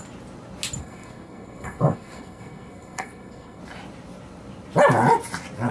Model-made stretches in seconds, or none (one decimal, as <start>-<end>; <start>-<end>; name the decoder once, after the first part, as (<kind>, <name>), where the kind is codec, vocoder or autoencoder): 0.8-3.6 (codec, SNAC)